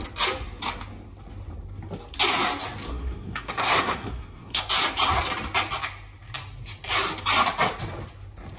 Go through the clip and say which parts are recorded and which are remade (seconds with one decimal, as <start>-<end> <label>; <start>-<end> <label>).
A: 0.0-2.9 recorded; 2.9-4.6 remade; 4.6-8.6 recorded